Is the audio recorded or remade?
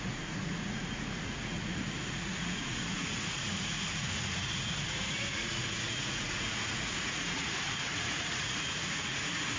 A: remade